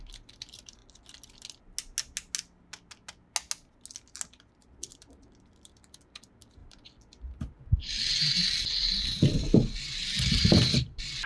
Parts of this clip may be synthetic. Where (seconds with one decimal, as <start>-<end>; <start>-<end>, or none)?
0.0-0.8; 4.6-11.3